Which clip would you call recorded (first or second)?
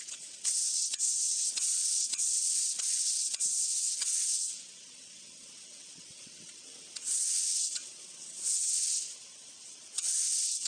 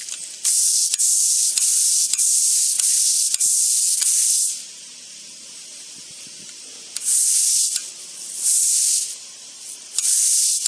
second